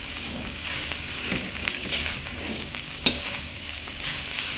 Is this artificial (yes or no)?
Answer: yes